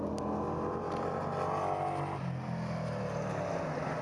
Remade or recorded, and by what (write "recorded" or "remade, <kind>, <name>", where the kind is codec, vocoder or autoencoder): recorded